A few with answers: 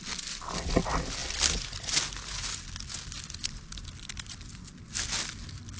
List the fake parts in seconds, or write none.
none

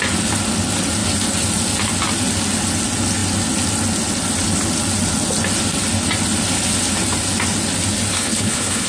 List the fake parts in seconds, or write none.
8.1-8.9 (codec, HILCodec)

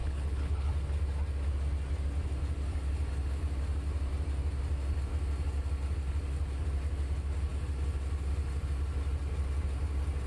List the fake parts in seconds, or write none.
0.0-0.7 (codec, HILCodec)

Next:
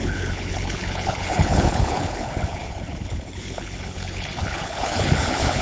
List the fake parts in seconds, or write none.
0.0-5.6 (codec, HILCodec)